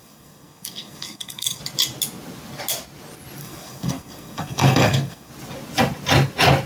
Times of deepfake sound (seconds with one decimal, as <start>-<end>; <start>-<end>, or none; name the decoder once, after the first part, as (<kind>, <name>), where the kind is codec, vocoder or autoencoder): 0.0-1.6 (codec, SNAC); 3.4-5.3